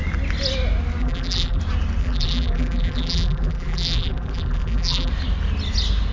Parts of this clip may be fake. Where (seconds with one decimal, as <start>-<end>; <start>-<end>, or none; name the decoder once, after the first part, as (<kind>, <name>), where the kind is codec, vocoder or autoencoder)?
1.0-1.6 (vocoder, BigVGAN v2); 2.0-5.1